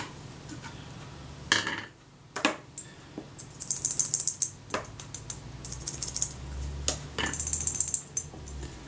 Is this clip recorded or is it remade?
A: recorded